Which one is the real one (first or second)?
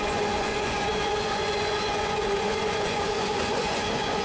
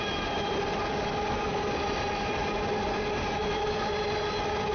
second